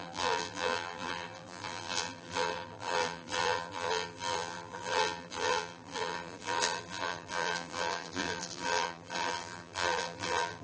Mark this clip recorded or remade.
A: remade